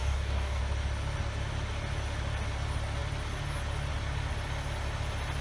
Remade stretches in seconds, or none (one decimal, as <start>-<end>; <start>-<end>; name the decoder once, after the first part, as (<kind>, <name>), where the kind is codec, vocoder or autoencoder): 0.0-0.6 (codec, DAC)